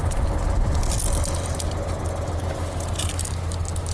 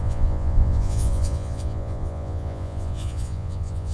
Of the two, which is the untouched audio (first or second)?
first